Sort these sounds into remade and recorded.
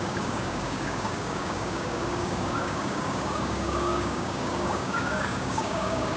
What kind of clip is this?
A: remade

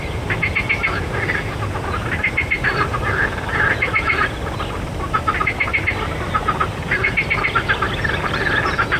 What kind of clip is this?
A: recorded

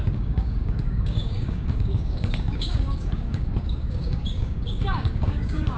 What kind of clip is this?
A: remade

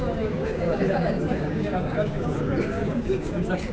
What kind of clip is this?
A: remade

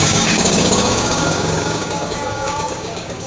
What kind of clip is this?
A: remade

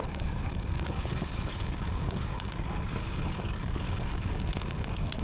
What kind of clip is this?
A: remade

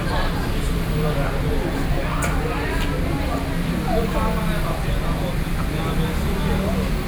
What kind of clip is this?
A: recorded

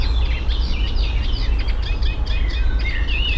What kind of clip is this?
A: recorded